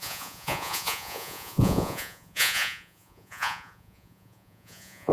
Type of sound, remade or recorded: remade